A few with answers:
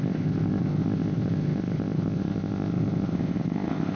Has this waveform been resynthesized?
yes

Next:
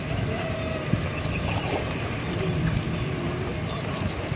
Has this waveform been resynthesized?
no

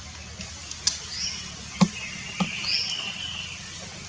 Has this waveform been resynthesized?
no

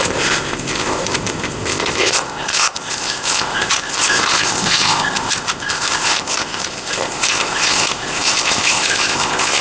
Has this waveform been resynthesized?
yes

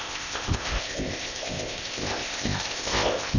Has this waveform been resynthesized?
yes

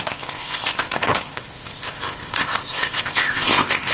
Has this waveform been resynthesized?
yes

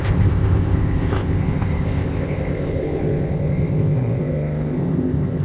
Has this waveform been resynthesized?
yes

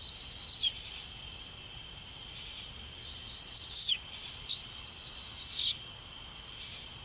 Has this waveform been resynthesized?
no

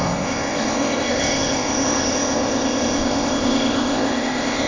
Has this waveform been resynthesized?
yes